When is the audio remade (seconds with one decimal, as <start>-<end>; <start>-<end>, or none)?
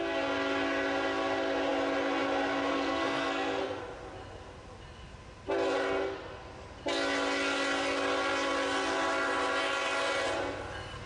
2.7-3.8